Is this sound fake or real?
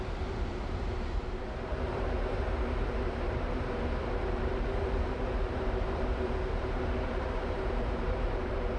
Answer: fake